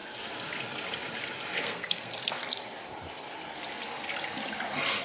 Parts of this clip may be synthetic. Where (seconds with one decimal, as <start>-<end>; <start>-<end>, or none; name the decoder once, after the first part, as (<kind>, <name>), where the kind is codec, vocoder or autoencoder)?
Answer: 1.5-2.4 (codec, SNAC)